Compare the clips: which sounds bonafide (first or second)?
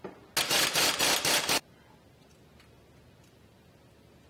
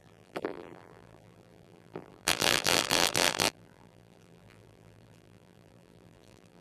first